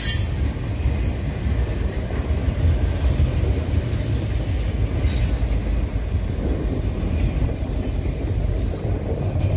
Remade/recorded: recorded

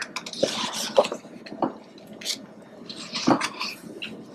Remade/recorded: recorded